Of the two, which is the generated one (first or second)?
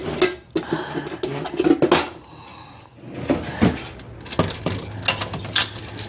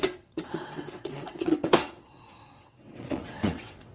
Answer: second